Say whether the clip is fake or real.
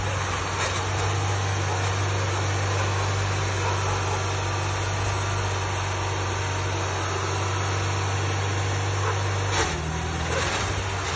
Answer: real